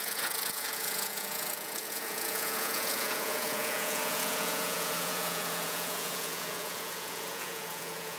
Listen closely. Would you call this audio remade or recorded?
remade